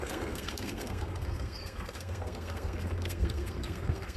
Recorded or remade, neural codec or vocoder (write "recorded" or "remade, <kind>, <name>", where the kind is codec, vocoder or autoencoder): remade, codec, SNAC